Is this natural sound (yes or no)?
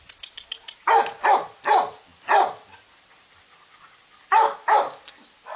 yes